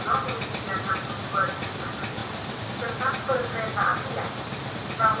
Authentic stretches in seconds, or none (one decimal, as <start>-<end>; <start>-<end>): 0.0-5.2